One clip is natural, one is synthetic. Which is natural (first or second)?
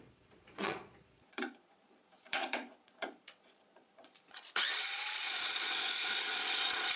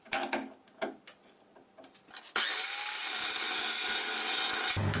second